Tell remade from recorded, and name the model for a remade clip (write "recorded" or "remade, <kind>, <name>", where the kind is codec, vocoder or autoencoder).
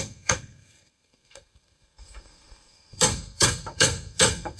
remade, codec, SNAC